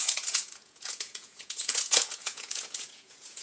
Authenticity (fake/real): fake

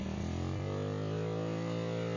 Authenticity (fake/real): real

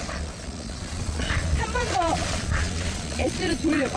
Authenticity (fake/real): fake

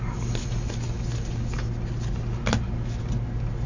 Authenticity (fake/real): real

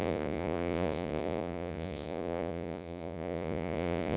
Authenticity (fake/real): fake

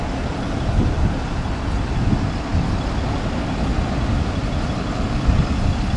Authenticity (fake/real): real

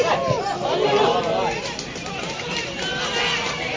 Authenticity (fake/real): real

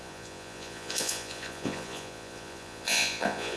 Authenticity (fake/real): fake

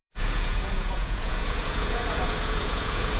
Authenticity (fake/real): fake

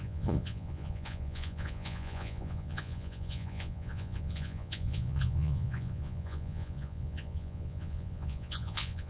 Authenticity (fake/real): fake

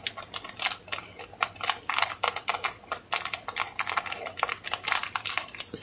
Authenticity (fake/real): real